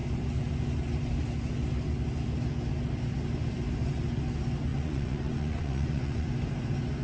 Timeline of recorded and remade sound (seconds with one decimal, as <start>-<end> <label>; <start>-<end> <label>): 0.0-4.7 recorded; 4.7-6.3 remade; 6.3-7.0 recorded